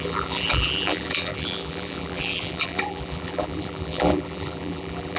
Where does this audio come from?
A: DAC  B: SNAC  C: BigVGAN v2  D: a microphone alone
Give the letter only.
C